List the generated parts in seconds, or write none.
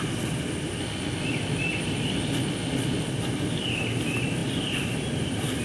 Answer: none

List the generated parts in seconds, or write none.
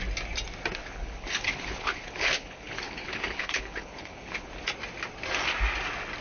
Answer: 0.8-4.5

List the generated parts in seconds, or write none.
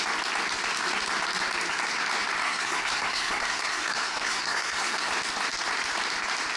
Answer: 2.4-5.1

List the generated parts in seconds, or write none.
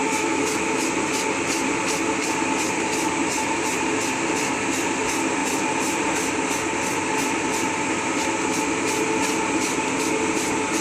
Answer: 0.0-0.8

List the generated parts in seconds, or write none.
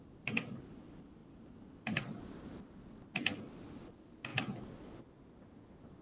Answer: none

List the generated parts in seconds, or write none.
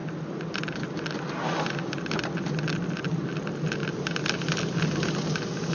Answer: none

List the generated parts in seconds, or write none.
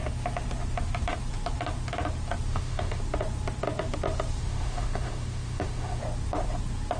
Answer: 2.5-3.0; 4.4-6.0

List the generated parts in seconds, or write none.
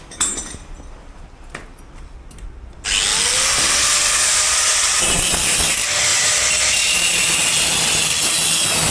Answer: none